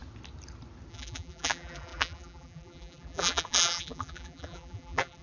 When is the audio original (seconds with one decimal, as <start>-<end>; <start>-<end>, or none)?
0.0-0.9